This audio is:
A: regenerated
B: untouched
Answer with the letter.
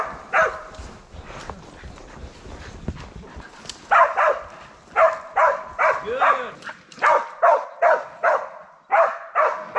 B